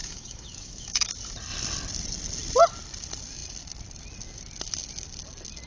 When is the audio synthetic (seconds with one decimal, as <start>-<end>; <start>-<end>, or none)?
0.0-1.1